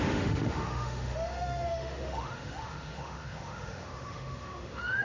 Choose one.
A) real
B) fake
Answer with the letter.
B